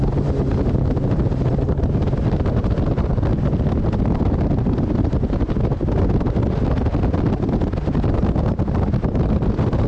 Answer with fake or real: real